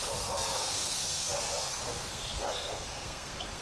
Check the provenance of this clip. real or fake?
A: fake